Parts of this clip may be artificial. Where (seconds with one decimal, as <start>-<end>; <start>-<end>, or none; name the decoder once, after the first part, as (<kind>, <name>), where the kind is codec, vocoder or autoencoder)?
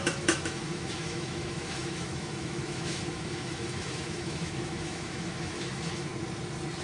0.0-6.1 (autoencoder, DAC-VAE)